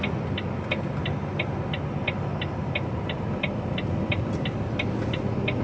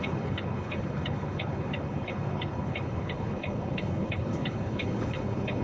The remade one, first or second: second